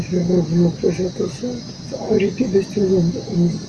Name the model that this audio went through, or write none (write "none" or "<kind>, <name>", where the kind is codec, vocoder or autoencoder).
none